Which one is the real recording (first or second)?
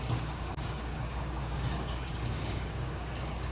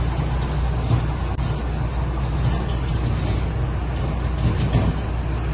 second